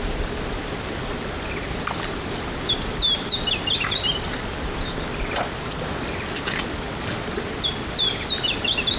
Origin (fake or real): real